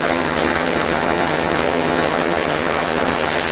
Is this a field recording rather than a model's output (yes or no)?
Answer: no